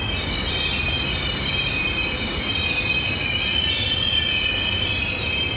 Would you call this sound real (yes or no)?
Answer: no